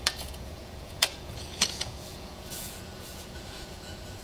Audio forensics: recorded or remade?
remade